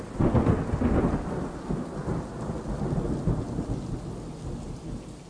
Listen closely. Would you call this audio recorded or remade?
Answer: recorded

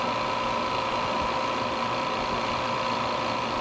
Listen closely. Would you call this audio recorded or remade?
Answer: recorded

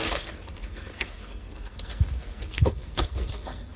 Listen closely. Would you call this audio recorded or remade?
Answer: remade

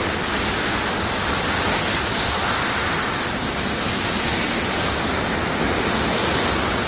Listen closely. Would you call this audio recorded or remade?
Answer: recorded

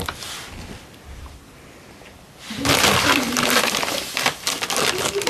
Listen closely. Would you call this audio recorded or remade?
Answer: remade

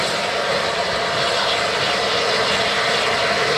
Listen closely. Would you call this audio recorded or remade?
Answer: recorded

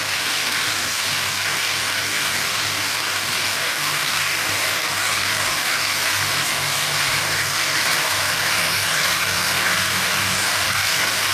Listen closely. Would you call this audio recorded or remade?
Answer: remade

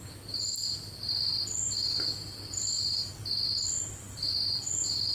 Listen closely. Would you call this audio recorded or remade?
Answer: recorded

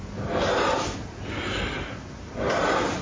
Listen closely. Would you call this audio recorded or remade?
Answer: recorded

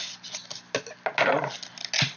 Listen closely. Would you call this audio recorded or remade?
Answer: recorded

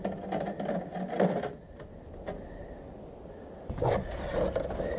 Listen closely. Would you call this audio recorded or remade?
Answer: recorded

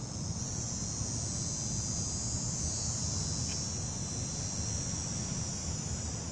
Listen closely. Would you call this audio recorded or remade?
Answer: recorded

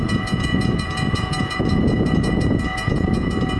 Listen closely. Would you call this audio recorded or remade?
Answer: remade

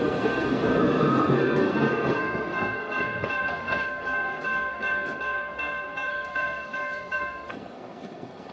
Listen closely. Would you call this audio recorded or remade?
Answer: remade